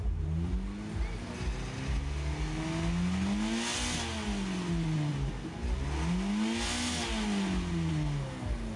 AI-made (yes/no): no